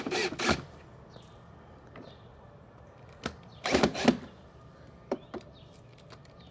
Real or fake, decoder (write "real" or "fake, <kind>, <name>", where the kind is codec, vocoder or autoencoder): fake, vocoder, BigVGAN v2